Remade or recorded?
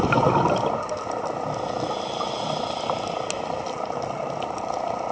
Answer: recorded